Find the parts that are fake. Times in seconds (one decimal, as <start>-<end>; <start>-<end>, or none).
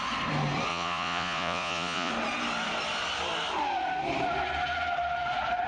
0.7-2.1